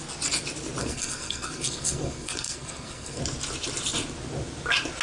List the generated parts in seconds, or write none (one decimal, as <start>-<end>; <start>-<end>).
0.8-3.2